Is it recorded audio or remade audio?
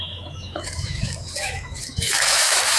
remade